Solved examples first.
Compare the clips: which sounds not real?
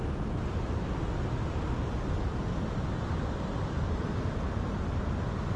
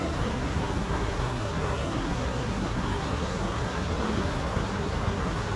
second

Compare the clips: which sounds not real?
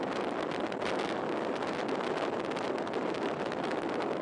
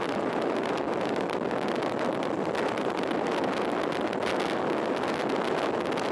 first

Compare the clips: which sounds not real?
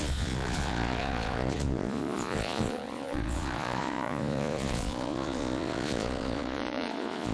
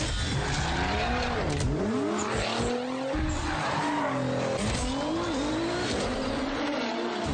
first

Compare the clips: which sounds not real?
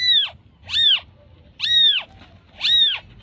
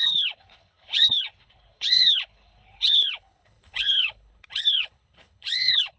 second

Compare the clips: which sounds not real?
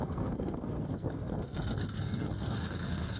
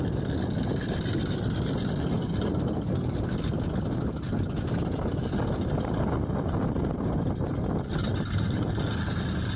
first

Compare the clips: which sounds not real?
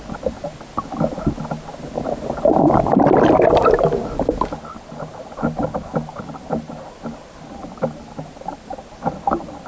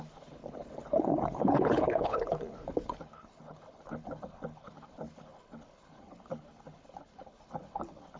second